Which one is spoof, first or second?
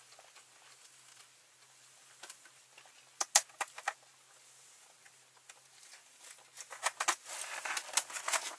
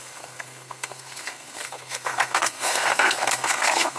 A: second